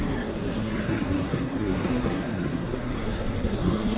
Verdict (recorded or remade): remade